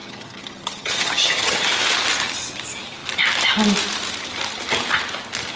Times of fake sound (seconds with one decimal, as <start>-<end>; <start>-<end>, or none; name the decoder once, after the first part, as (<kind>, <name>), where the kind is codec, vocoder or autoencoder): 0.0-1.7 (vocoder, HiFi-GAN)